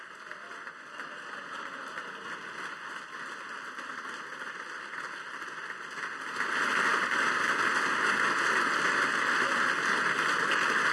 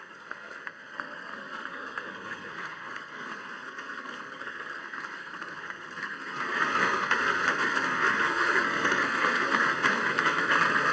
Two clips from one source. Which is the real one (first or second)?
first